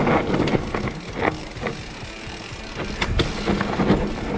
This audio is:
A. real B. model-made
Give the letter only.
A